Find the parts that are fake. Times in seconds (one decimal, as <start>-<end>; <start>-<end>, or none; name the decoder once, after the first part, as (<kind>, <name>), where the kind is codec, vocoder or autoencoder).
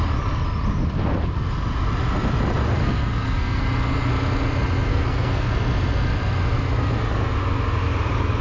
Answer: 2.8-3.6 (codec, SNAC); 4.9-5.5